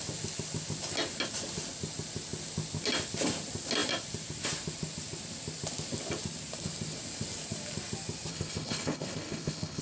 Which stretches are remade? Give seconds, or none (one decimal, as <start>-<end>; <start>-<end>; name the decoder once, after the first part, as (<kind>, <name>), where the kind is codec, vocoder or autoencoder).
8.3-9.8 (codec, HILCodec)

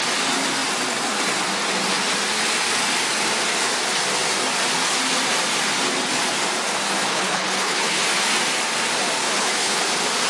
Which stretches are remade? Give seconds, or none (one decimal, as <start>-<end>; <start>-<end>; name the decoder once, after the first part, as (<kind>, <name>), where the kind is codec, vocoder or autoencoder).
7.1-8.0 (codec, HILCodec); 9.2-9.8

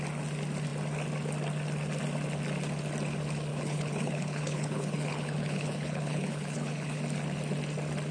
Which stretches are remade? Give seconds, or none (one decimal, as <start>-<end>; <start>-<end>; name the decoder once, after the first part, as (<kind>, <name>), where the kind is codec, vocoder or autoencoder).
3.5-7.0 (codec, HILCodec)

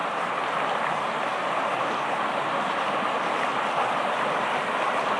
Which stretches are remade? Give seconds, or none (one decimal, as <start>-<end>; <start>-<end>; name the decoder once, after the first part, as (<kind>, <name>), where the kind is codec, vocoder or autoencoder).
none

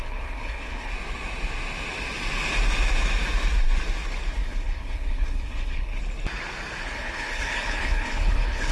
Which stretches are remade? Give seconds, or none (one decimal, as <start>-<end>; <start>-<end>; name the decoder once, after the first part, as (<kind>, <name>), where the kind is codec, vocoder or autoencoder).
0.0-0.9 (codec, HILCodec); 4.3-6.0; 6.8-8.7

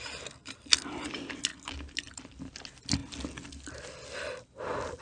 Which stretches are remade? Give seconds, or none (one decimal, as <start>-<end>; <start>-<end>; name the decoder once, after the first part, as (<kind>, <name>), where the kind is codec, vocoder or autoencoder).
none

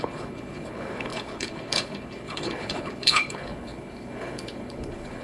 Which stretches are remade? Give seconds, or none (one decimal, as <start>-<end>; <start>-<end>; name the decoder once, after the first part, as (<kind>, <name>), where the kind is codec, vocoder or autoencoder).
0.0-5.2 (codec, HILCodec)

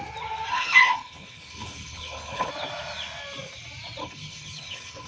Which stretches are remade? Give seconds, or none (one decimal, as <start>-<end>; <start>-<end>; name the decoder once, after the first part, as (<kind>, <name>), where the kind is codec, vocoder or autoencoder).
0.5-2.5 (codec, HILCodec); 4.0-5.1